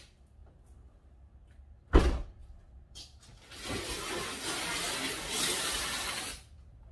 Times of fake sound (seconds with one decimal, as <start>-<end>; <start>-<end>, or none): none

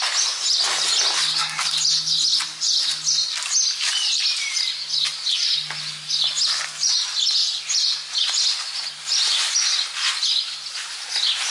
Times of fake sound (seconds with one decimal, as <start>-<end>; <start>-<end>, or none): none

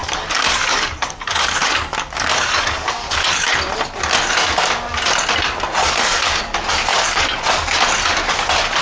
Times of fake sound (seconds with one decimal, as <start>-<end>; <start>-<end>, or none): 0.0-3.5; 5.8-6.4; 6.9-7.4

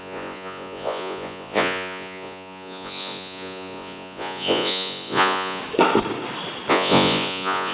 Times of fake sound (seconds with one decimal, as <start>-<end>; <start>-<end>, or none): 0.0-5.6; 6.7-7.7

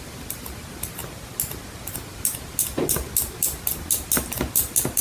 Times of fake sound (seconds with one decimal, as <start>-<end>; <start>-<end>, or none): none

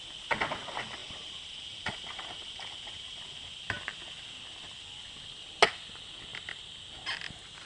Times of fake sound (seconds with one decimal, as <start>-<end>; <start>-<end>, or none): 1.0-3.2

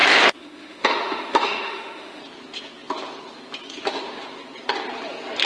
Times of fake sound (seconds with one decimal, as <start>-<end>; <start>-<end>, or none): 0.0-2.2

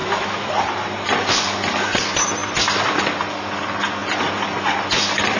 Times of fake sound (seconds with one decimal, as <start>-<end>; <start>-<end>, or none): 0.0-0.5